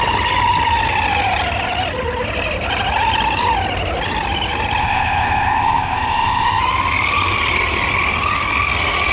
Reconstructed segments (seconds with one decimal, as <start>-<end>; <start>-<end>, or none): 4.8-6.6

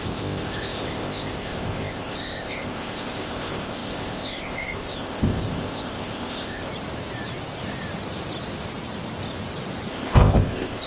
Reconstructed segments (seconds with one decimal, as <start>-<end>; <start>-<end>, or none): 0.0-6.7; 9.9-10.9

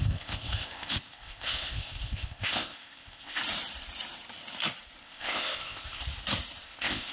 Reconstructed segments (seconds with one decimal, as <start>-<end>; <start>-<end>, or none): 0.0-3.4; 5.0-6.0; 6.6-7.1

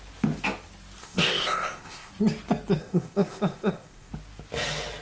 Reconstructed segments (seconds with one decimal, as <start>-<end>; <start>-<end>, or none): 1.0-2.1; 2.8-4.1

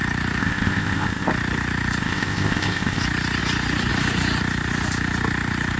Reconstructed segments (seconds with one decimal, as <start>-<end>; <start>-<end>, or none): 0.4-1.3; 2.0-3.0

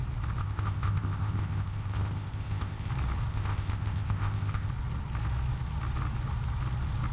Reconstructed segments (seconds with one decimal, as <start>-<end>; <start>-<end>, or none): 0.4-2.9; 3.3-4.7